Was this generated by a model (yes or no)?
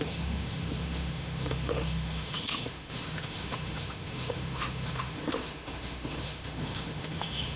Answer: yes